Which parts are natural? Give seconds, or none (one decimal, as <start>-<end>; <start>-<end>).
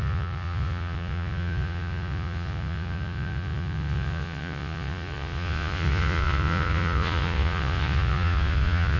none